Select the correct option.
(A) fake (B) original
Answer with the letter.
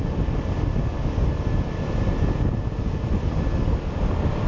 B